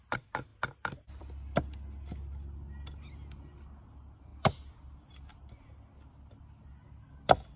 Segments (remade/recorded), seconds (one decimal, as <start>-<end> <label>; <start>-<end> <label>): 0.0-7.6 recorded